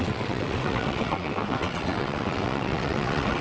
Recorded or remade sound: remade